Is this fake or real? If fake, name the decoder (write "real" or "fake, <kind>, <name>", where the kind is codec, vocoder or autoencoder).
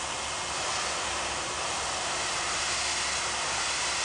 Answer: real